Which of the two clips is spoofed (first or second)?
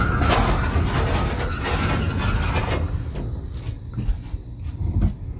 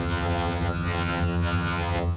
second